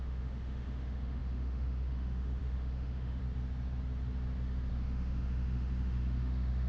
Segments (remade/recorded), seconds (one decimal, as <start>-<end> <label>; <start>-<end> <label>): 0.0-3.2 remade; 3.2-4.7 recorded; 4.7-6.7 remade